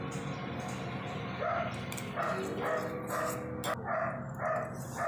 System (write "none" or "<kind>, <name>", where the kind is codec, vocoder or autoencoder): none